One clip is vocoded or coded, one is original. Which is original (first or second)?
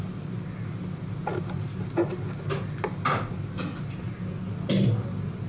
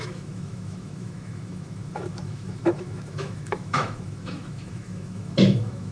first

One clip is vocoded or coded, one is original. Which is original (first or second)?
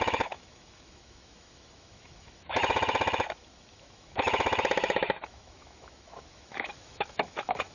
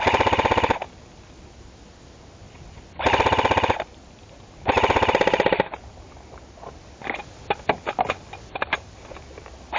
second